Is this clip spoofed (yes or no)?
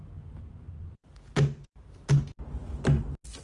no